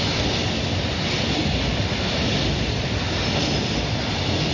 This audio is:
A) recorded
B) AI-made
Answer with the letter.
A